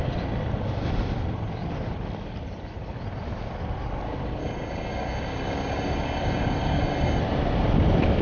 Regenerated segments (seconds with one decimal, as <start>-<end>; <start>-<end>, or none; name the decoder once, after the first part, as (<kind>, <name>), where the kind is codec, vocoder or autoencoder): 4.4-7.2 (codec, DAC)